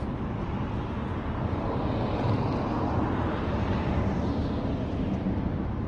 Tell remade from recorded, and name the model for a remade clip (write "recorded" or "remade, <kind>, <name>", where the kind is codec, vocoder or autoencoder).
recorded